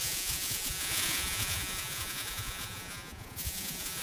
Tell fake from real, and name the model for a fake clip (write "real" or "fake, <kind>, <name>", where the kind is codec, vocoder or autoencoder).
fake, vocoder, Vocos